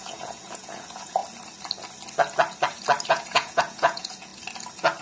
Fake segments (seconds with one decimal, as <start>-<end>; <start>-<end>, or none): 0.0-1.2; 3.1-4.3